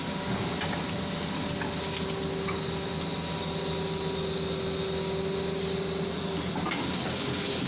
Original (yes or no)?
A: yes